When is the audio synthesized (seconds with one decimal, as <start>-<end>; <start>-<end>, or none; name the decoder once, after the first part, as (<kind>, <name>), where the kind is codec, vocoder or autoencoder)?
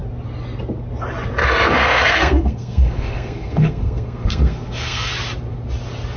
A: 1.4-5.1 (codec, SNAC)